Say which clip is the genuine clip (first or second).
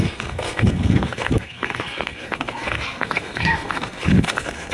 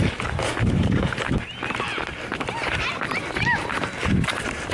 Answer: second